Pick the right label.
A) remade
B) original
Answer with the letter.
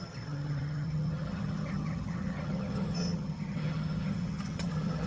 A